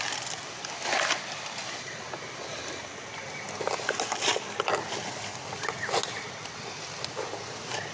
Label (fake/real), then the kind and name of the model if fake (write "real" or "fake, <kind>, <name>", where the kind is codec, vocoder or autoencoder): real